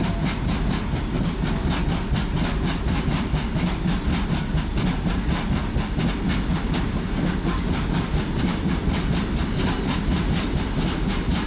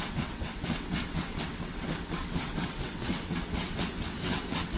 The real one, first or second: first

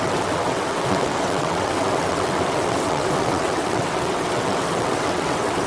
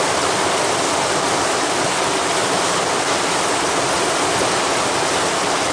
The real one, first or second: second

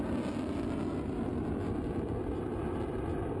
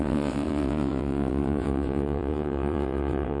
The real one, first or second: first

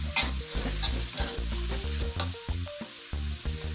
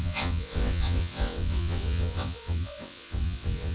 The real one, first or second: first